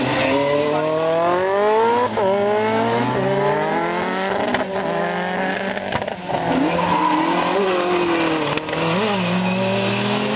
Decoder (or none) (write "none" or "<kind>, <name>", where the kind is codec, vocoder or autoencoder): none